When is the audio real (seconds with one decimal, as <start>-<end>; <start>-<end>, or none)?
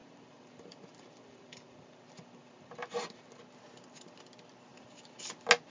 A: 3.4-4.7; 5.2-5.7